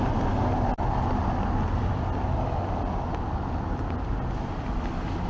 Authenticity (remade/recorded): recorded